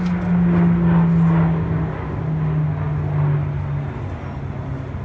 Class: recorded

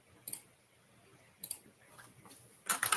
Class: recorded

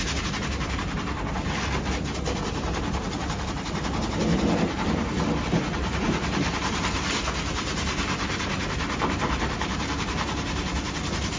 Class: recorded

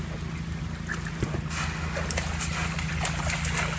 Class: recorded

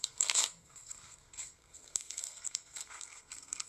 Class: remade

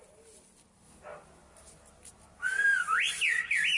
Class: recorded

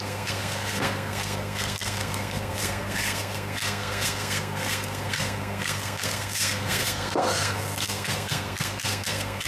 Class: remade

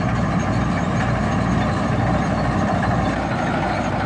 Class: recorded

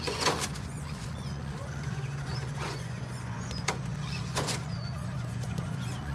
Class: remade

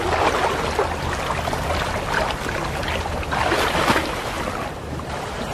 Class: recorded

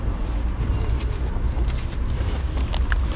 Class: recorded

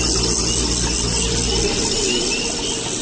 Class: recorded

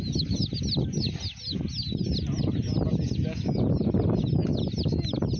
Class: recorded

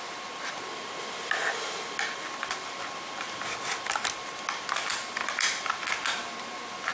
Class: recorded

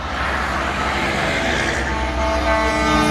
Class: recorded